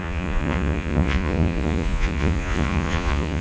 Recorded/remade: remade